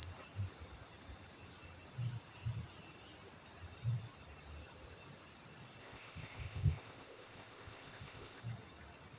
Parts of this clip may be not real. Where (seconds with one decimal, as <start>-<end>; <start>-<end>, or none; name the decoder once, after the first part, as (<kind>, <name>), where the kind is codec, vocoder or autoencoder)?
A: 5.8-8.4 (codec, ZipCodec)